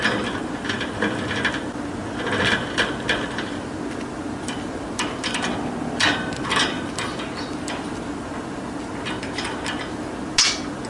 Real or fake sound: real